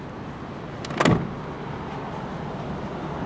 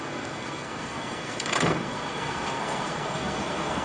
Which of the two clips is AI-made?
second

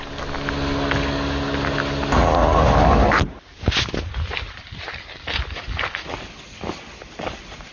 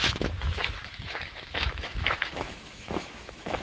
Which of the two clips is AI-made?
second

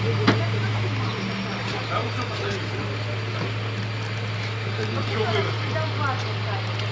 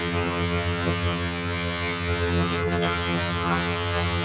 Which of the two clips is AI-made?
second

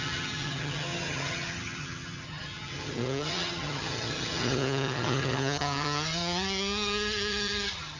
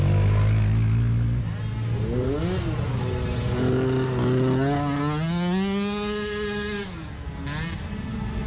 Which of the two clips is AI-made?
first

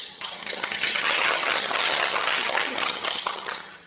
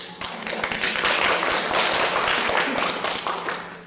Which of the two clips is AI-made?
first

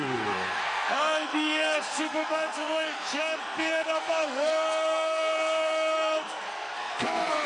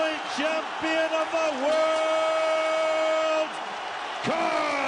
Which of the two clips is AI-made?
first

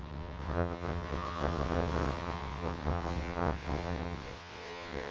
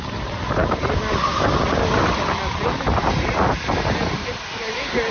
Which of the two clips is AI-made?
first